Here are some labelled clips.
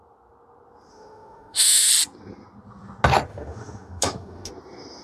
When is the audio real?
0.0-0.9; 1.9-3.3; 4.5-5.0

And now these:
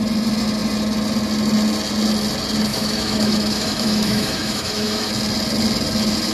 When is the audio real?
0.0-2.7; 5.1-6.3

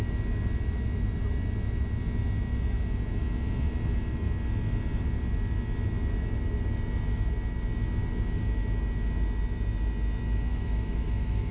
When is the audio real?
0.0-10.5

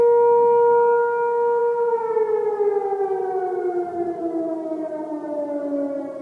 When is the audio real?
0.0-1.6; 2.1-6.2

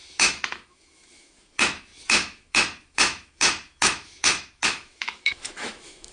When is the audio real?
none

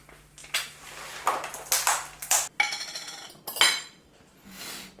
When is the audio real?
0.0-5.0